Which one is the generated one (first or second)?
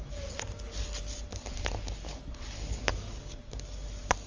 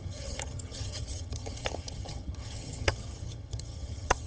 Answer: second